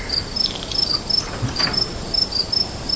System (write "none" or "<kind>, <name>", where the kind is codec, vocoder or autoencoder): none